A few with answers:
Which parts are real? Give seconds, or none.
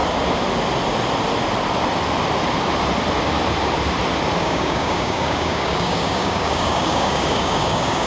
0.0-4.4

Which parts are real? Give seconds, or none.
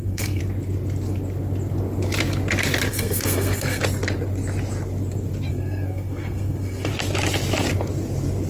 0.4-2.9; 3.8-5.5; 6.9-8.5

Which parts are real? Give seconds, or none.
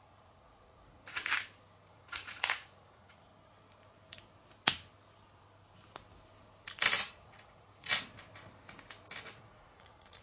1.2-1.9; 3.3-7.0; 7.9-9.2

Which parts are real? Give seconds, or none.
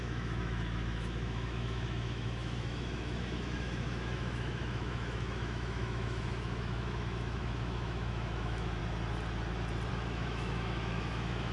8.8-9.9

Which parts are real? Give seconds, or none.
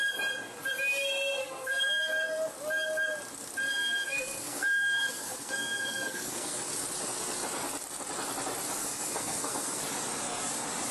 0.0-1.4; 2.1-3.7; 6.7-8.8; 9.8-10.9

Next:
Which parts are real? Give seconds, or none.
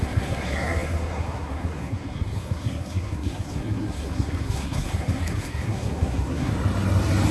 6.5-7.3